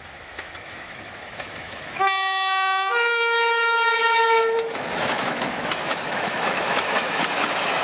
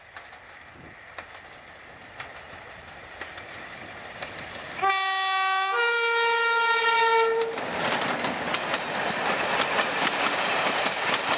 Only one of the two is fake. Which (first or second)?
first